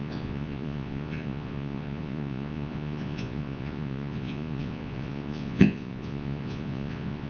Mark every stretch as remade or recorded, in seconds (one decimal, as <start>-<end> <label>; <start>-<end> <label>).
0.0-7.3 remade